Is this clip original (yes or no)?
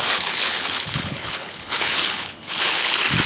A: no